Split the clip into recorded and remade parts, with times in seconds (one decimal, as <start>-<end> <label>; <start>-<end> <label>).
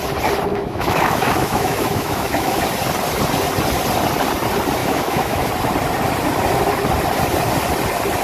0.0-0.5 recorded; 0.5-2.6 remade; 2.6-4.8 recorded; 4.8-5.5 remade; 5.5-8.2 recorded